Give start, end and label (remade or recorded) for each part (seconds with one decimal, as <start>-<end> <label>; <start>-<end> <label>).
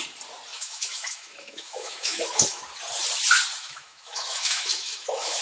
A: 0.0-0.5 recorded; 0.5-2.6 remade; 2.6-3.6 recorded; 3.6-5.4 remade